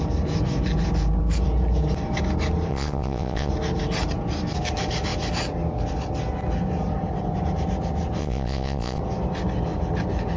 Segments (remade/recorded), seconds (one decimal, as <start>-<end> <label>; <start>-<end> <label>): 0.0-2.7 recorded; 2.7-3.5 remade; 3.5-8.2 recorded; 8.2-9.0 remade; 9.0-10.4 recorded